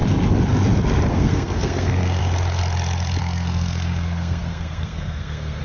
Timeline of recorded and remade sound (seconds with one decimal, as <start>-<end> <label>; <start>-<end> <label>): 0.0-1.1 recorded; 1.1-2.2 remade; 2.2-3.2 recorded; 3.2-5.6 remade

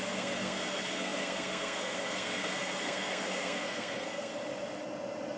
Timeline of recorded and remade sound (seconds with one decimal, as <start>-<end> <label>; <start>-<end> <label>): 0.0-4.3 remade; 4.3-5.4 recorded

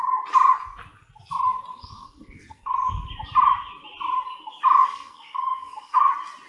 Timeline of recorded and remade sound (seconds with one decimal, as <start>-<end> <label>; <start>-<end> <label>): 0.0-1.7 recorded; 1.7-3.1 remade; 3.1-4.8 recorded; 4.8-6.1 remade; 6.1-6.5 recorded

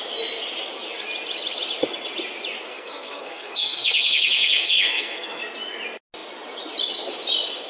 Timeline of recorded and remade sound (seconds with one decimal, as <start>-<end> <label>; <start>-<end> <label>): 0.0-2.7 recorded; 2.7-5.4 remade; 5.4-7.7 recorded

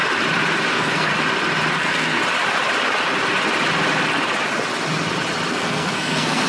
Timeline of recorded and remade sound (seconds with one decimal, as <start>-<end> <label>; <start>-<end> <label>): 0.0-0.7 recorded; 0.7-1.1 remade; 1.1-1.8 recorded; 1.8-2.2 remade; 2.2-5.5 recorded; 5.5-6.5 remade

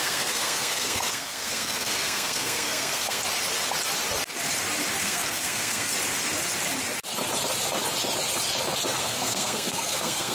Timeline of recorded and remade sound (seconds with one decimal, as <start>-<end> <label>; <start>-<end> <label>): 0.0-3.2 remade; 3.2-5.0 recorded; 5.0-5.9 remade; 5.9-9.0 recorded; 9.0-10.3 remade

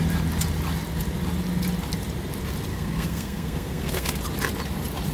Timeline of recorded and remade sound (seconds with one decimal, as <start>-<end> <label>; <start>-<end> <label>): 0.0-2.7 recorded; 2.7-4.2 remade; 4.2-5.1 recorded